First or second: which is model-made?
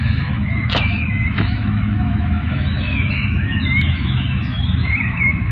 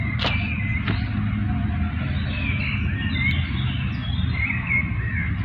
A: first